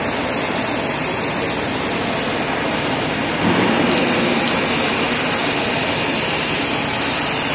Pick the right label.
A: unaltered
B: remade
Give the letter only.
A